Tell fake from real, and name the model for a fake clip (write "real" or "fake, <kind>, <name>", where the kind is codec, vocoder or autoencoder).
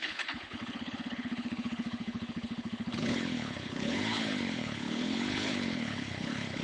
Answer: fake, codec, HILCodec